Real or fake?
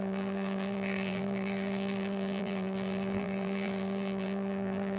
fake